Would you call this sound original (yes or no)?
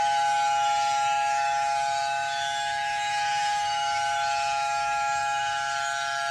no